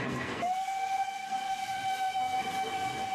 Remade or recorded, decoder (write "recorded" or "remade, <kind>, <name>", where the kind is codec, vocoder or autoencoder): remade, codec, SNAC